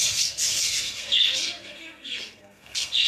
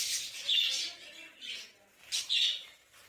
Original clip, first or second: second